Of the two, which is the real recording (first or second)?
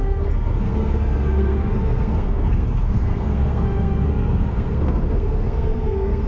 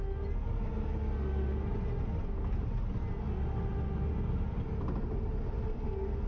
second